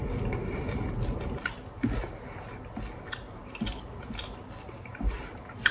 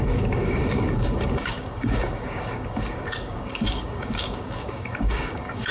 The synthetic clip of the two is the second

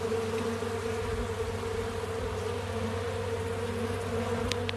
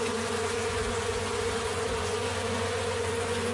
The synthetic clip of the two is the second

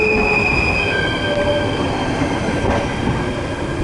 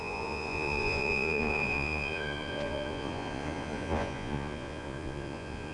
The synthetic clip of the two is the second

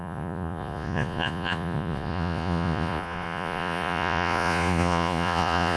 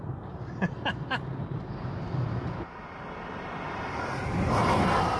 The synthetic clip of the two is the first